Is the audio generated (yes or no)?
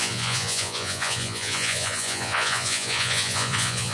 yes